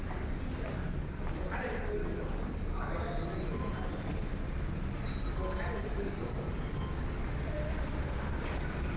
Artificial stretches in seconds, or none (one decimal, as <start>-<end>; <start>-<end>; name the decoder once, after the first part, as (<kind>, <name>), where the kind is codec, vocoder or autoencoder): 2.0-2.9 (codec, DAC); 5.9-7.2